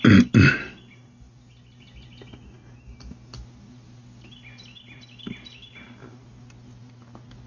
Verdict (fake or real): real